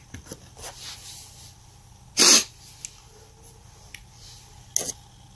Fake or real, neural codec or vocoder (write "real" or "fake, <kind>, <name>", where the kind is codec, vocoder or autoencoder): real